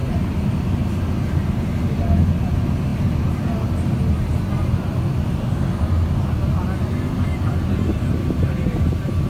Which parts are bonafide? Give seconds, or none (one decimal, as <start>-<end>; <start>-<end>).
0.0-9.3

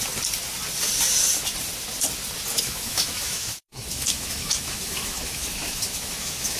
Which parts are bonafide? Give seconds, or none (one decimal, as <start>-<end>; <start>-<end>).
0.0-2.5